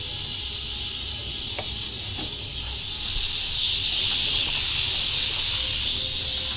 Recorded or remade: recorded